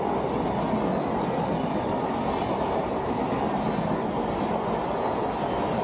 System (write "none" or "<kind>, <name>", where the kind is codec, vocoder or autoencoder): none